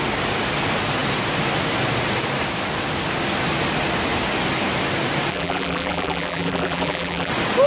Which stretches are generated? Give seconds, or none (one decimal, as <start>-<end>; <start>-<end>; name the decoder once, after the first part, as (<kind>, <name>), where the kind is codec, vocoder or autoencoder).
5.3-7.3 (vocoder, BigVGAN v2)